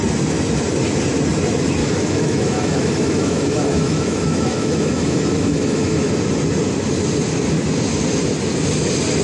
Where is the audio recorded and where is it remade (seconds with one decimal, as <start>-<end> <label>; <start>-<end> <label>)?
0.0-1.8 recorded; 1.8-6.1 remade; 6.1-9.2 recorded